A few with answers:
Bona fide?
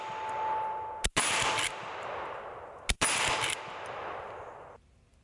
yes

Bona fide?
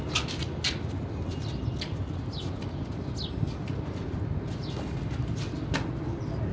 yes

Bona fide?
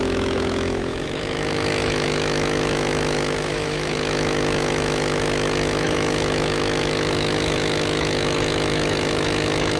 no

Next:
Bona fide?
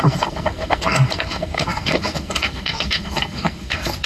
no